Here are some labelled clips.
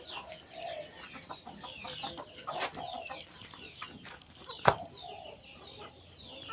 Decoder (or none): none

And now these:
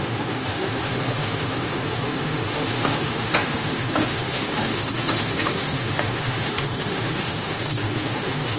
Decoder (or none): autoencoder, DAC-VAE